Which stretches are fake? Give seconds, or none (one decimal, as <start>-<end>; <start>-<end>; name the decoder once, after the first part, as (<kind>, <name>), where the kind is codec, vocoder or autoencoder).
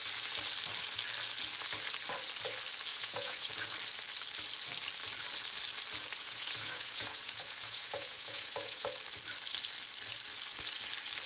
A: 2.9-3.5 (vocoder, Vocos); 6.2-8.9